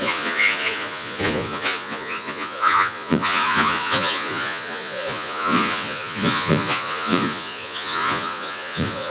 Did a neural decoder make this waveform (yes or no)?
yes